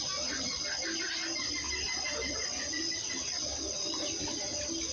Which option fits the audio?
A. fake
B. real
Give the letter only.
B